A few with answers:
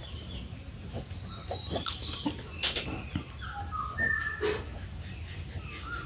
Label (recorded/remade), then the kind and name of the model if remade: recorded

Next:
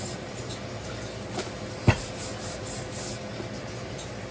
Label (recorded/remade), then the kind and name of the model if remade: recorded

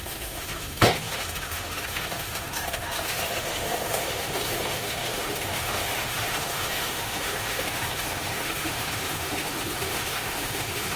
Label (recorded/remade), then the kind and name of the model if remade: remade, autoencoder, DAC-VAE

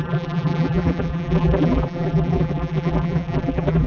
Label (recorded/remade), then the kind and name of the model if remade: remade, vocoder, BigVGAN v2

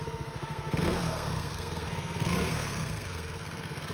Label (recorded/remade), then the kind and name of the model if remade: remade, codec, SNAC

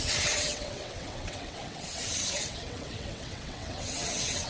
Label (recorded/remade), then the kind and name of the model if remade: remade, vocoder, WaveNeXt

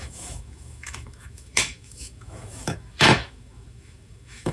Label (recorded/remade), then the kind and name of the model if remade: remade, autoencoder, DAC-VAE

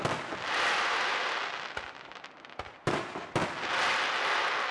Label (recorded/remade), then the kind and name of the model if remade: recorded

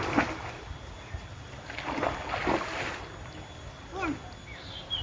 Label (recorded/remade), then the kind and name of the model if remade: recorded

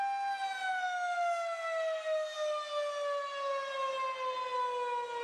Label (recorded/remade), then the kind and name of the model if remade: recorded